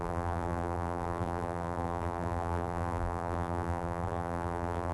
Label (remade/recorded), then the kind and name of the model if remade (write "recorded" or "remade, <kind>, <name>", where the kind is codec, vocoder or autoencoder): remade, vocoder, BigVGAN v2